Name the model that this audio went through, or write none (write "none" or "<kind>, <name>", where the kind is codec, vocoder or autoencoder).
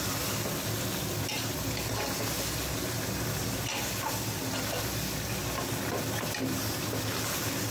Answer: none